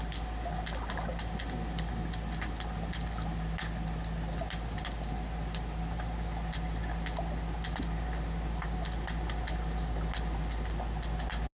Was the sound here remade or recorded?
recorded